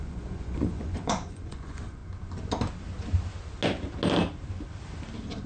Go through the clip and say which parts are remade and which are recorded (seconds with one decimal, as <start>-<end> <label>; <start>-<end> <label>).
0.0-2.0 remade; 2.0-5.5 recorded